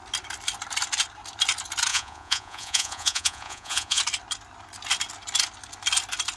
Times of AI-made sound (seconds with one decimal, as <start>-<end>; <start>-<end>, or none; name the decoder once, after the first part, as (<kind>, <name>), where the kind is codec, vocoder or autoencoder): 1.9-4.0 (vocoder, Vocos)